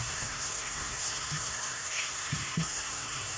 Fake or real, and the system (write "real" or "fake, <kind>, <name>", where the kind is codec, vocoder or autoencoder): fake, codec, SNAC